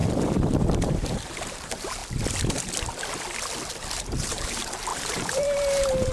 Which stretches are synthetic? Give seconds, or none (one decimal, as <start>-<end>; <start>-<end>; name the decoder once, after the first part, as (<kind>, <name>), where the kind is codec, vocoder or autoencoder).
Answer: 0.0-2.0 (vocoder, BigVGAN v2); 4.0-6.1